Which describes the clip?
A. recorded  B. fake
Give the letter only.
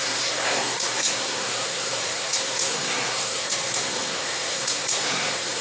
B